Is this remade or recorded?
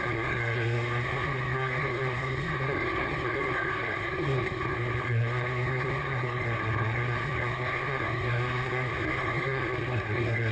remade